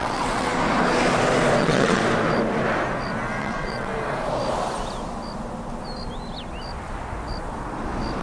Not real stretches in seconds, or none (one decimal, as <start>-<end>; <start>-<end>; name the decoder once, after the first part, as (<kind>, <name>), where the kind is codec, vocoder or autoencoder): 0.0-0.5 (vocoder, WaveNeXt); 1.6-2.0; 3.4-3.9